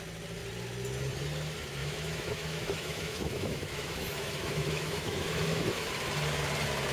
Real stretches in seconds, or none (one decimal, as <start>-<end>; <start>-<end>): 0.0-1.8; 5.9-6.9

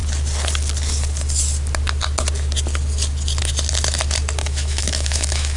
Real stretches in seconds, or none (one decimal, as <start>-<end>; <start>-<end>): 0.0-4.4

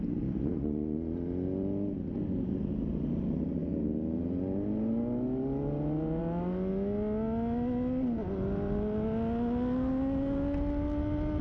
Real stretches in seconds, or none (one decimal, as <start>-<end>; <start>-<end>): 0.0-11.4

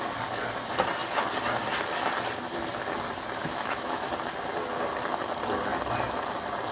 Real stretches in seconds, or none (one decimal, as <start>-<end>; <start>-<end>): 0.0-3.4; 4.1-6.7

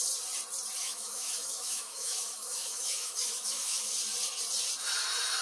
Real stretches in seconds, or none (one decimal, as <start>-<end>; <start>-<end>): 0.0-0.8; 4.0-5.4